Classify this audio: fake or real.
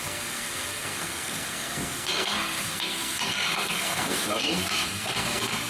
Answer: fake